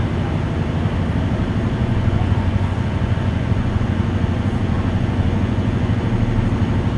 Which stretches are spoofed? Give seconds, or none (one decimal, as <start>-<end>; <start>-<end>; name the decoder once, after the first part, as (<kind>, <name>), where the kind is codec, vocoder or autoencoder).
1.8-6.0 (vocoder, Vocos)